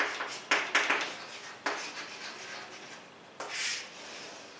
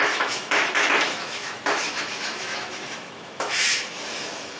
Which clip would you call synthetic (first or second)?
second